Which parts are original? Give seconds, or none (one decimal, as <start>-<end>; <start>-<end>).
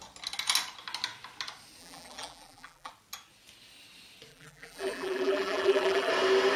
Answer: 0.0-1.8; 2.9-4.3; 6.1-6.6